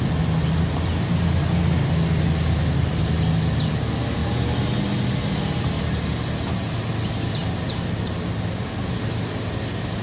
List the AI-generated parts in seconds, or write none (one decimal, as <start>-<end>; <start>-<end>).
none